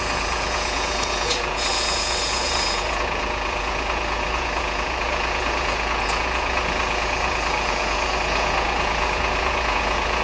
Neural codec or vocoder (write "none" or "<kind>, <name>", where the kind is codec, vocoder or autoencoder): vocoder, Vocos